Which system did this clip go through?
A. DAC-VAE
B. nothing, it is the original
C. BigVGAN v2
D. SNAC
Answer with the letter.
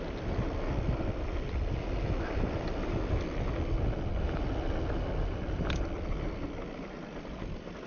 B